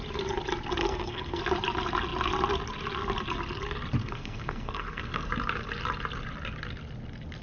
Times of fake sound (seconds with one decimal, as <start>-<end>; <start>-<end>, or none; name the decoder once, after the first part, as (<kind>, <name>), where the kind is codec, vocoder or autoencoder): 0.8-1.4 (codec, SNAC); 4.0-5.3